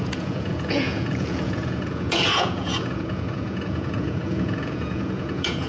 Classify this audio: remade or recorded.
remade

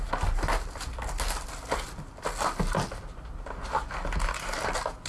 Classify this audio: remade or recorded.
recorded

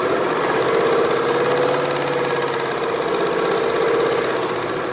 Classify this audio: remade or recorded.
recorded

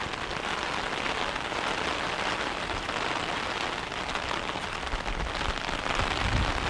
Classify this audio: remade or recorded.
recorded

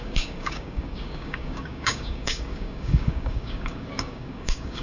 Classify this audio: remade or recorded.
remade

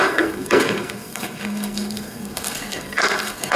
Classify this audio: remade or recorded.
remade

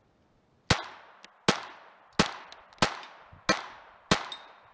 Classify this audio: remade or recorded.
recorded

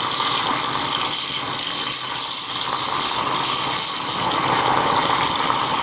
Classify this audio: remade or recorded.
recorded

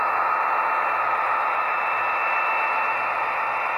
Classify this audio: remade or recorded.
recorded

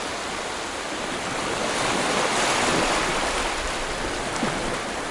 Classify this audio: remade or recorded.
recorded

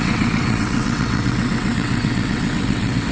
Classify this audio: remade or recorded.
remade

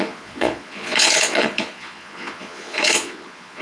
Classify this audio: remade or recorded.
remade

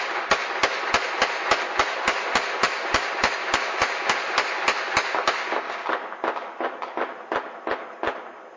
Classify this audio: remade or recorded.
recorded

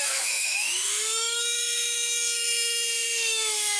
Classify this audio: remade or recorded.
remade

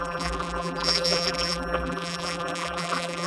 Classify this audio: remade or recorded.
remade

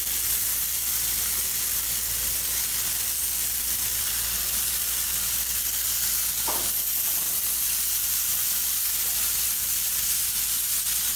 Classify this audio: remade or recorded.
recorded